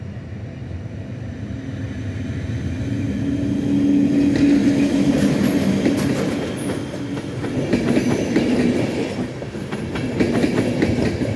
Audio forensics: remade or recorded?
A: recorded